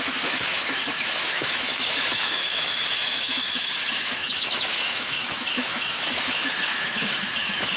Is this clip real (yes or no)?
no